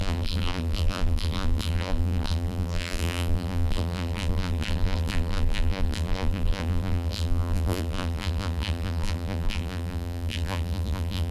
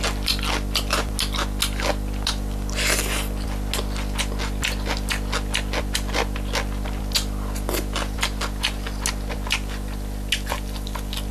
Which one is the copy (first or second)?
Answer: first